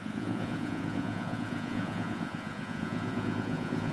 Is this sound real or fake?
fake